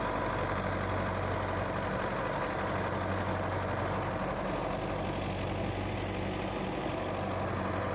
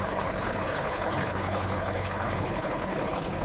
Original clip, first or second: first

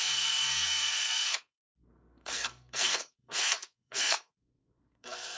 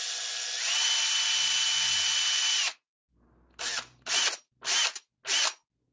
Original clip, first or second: second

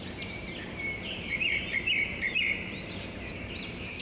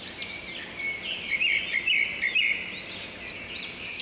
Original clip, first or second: second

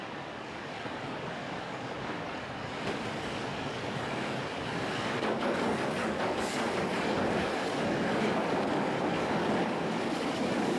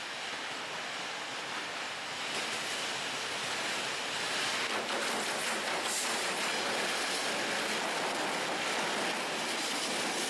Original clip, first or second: second